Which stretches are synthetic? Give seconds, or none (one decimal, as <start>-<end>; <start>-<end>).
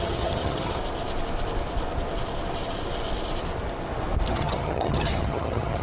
0.0-0.8; 4.3-5.8